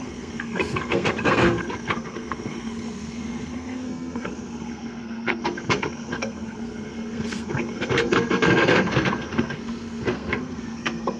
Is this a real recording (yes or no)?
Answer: no